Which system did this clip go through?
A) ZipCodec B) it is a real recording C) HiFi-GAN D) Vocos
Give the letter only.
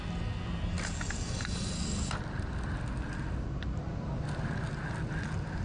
B